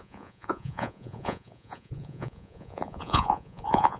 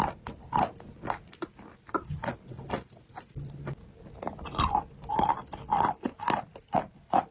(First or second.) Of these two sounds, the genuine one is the second